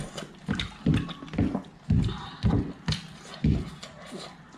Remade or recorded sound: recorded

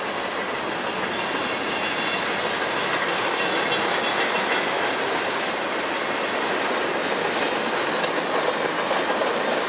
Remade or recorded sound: recorded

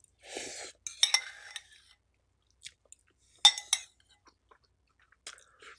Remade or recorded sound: recorded